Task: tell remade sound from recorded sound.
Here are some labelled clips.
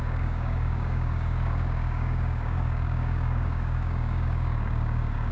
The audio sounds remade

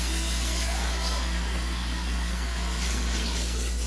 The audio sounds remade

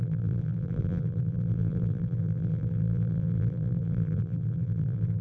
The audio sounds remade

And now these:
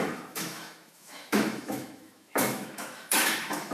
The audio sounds remade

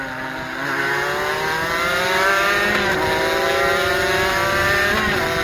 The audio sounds recorded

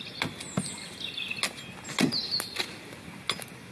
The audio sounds recorded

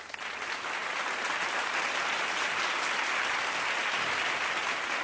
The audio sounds recorded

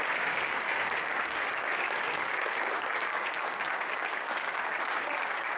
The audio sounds remade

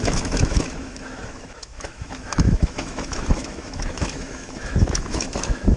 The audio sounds remade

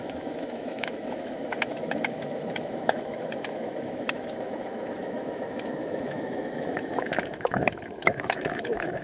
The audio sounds remade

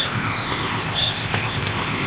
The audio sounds remade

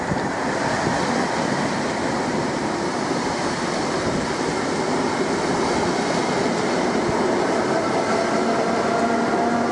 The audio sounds recorded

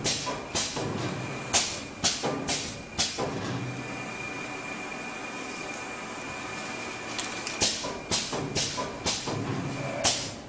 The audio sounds recorded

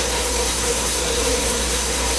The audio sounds remade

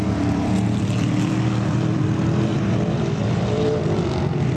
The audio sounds remade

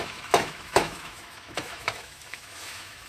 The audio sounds remade